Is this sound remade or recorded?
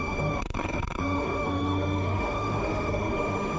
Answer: remade